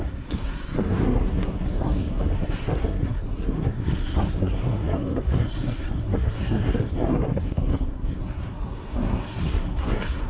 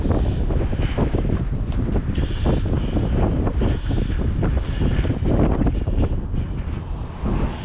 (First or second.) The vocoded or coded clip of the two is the first